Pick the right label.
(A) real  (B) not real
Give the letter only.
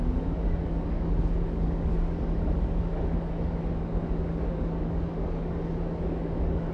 B